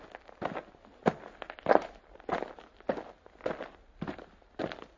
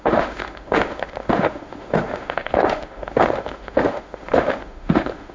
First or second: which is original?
first